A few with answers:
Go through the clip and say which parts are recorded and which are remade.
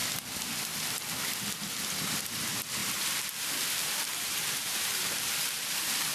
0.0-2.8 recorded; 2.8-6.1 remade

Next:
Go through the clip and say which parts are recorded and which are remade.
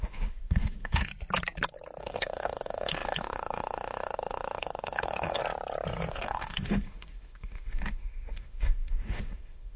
0.0-1.1 remade; 1.1-2.0 recorded; 2.0-5.4 remade; 5.4-6.1 recorded; 6.1-9.8 remade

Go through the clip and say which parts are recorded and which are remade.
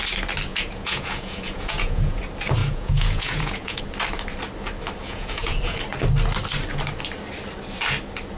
0.0-0.5 recorded; 0.5-2.2 remade; 2.2-2.6 recorded; 2.6-3.8 remade; 3.8-5.0 recorded; 5.0-5.6 remade; 5.6-8.4 recorded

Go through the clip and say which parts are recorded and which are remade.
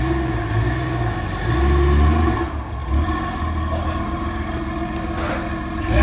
0.0-6.0 recorded